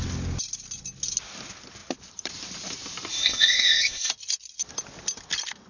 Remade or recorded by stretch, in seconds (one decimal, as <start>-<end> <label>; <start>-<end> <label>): 0.0-3.1 recorded; 3.1-4.1 remade; 4.1-5.7 recorded